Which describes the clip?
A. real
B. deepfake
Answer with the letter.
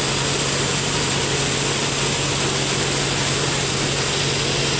A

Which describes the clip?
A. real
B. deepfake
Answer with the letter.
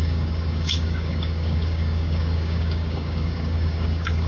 B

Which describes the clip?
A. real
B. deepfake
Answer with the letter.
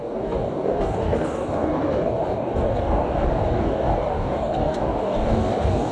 B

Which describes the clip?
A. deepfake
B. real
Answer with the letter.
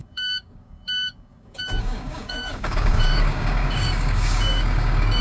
A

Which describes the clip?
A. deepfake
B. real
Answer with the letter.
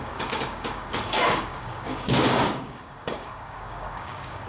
A